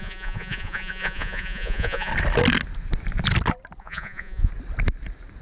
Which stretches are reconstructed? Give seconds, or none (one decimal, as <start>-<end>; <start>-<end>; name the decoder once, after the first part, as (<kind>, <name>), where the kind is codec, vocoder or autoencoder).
0.0-2.1 (vocoder, Vocos); 3.8-4.5